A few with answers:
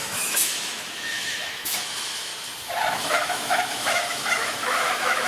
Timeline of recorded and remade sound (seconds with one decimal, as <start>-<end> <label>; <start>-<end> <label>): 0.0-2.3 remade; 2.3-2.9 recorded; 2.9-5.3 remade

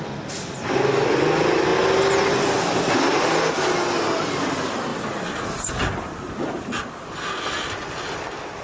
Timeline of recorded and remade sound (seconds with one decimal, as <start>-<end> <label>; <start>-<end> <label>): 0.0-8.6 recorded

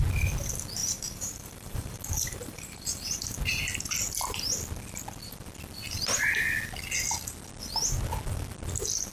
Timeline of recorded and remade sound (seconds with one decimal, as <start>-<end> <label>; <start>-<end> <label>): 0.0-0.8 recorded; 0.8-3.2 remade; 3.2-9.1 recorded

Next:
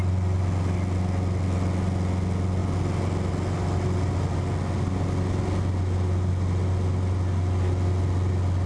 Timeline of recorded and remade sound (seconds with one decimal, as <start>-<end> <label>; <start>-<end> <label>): 0.0-8.7 recorded

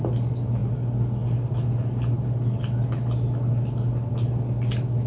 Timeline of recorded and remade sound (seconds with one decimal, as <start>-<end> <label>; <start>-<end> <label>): 0.0-5.1 recorded

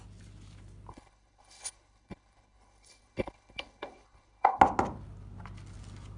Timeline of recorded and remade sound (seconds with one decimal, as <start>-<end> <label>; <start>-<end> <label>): 0.0-0.9 recorded; 0.9-4.6 remade; 4.6-6.2 recorded